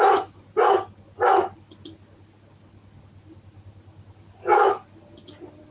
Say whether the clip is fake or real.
real